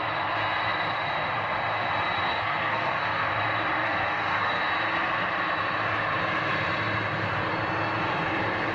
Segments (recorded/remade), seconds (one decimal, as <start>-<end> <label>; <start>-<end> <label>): 0.0-2.3 recorded; 2.3-3.3 remade; 3.3-3.8 recorded; 3.8-4.6 remade; 4.6-8.7 recorded

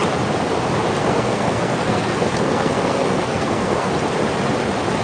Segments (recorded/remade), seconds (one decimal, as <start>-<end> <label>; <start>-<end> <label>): 0.0-1.0 recorded; 1.0-3.9 remade; 3.9-5.0 recorded

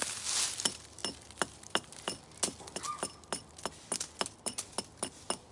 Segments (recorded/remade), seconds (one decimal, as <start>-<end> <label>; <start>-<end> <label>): 0.0-5.5 recorded

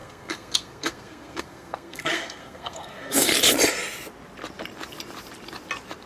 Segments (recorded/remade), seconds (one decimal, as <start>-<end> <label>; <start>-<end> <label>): 0.0-3.3 remade; 3.3-6.1 recorded

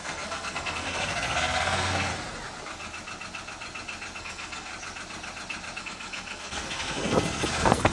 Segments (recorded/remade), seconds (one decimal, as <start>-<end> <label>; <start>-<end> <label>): 0.0-2.1 remade; 2.1-4.2 recorded; 4.2-4.7 remade; 4.7-5.8 recorded; 5.8-7.9 remade

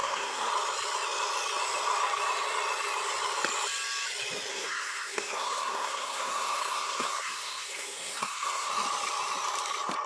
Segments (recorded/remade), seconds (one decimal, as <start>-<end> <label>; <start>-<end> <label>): 0.0-0.5 remade; 0.5-4.5 recorded; 4.5-8.7 remade; 8.7-10.1 recorded

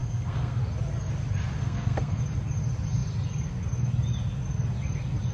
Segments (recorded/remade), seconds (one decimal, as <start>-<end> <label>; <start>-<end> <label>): 0.0-0.6 remade; 0.6-1.6 recorded; 1.6-2.2 remade; 2.2-5.3 recorded